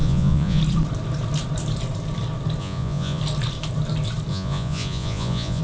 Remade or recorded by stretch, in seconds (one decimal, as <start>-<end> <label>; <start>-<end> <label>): 0.0-0.6 remade; 0.6-2.6 recorded; 2.6-3.2 remade; 3.2-4.3 recorded; 4.3-5.6 remade